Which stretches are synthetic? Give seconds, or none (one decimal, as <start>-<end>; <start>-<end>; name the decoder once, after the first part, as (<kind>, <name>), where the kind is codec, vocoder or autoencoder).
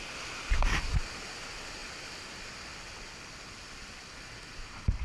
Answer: none